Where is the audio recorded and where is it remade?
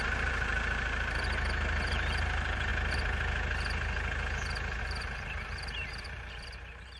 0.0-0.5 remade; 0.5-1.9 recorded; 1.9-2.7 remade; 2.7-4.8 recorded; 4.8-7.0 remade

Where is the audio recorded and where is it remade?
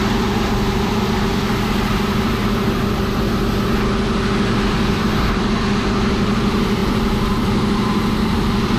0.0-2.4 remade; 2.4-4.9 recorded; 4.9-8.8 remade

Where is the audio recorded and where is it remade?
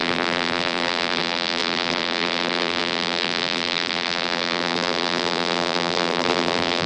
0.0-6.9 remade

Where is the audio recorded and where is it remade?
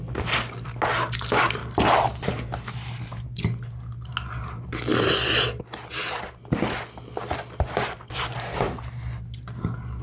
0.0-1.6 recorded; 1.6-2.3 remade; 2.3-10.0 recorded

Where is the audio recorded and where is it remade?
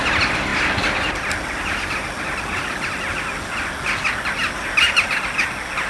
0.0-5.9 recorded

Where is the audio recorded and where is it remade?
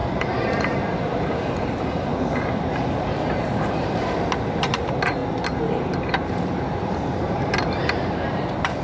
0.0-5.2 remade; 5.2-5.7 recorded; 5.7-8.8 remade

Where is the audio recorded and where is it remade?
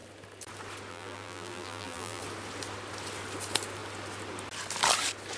0.0-0.9 recorded; 0.9-2.2 remade; 2.2-5.4 recorded